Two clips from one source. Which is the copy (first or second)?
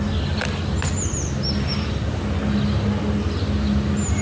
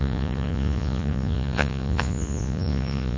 second